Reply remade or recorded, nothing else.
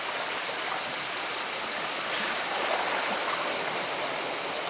recorded